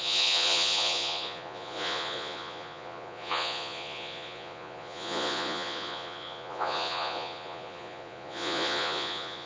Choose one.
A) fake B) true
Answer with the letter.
A